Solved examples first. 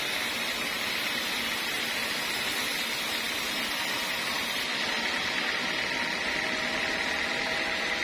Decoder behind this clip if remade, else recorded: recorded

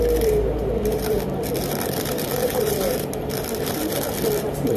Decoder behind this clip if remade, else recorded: remade, vocoder, BigVGAN v2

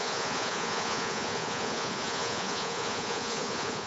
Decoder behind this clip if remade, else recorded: remade, vocoder, Vocos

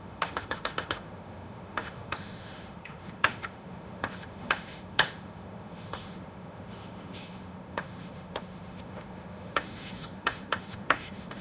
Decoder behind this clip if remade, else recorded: remade, autoencoder, DAC-VAE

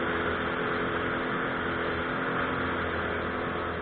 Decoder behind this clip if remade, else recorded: recorded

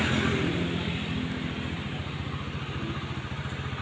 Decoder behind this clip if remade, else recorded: recorded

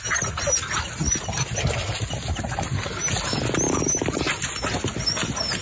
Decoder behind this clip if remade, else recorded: recorded